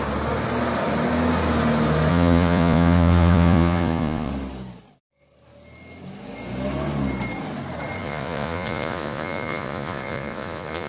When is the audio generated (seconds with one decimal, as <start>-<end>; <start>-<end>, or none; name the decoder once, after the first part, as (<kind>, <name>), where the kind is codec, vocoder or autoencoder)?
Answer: 2.1-4.3 (vocoder, Vocos); 8.0-10.9